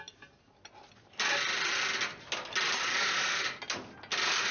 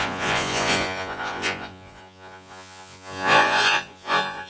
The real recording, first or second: first